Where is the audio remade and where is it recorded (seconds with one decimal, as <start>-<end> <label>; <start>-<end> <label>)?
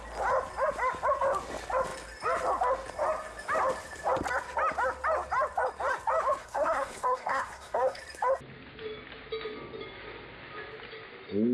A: 0.0-6.4 recorded; 6.4-8.0 remade; 8.0-11.5 recorded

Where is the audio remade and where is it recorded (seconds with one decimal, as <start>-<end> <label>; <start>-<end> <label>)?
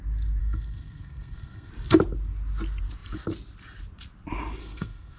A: 0.0-0.4 recorded; 0.4-1.7 remade; 1.7-4.6 recorded; 4.6-5.2 remade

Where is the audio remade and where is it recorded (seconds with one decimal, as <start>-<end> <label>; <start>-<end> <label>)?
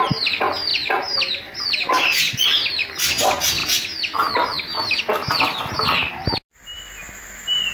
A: 0.0-7.7 recorded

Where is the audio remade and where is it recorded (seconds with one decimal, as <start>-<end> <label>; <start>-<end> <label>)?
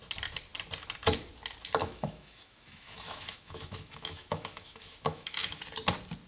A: 0.0-1.8 recorded; 1.8-5.6 remade; 5.6-6.3 recorded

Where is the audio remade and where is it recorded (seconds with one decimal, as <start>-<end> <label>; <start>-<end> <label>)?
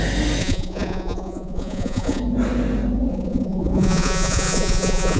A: 0.0-0.4 recorded; 0.4-2.2 remade; 2.2-3.1 recorded; 3.1-5.2 remade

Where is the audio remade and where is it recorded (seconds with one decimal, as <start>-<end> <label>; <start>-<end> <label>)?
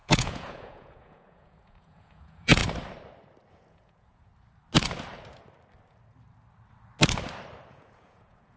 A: 0.0-2.6 remade; 2.6-3.5 recorded; 3.5-4.3 remade; 4.3-7.7 recorded; 7.7-8.6 remade